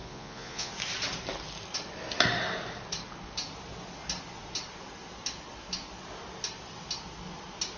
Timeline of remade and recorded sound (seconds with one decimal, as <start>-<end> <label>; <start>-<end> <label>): 0.0-0.7 remade; 0.7-7.8 recorded